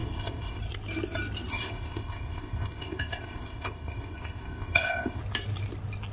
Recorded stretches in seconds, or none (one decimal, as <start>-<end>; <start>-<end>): 0.6-1.5; 5.2-6.1